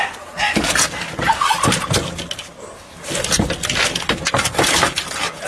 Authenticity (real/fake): real